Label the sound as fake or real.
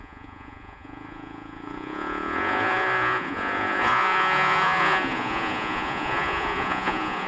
fake